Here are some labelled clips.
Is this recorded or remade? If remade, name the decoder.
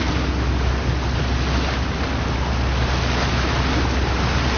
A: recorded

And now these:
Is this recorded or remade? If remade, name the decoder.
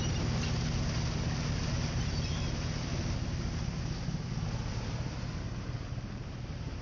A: recorded